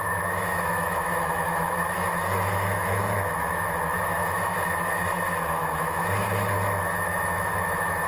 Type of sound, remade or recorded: remade